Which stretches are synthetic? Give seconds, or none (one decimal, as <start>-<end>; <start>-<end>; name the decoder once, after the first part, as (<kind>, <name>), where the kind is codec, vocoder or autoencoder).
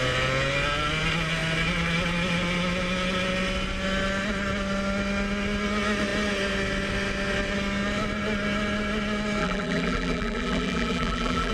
9.4-11.5 (vocoder, BigVGAN v2)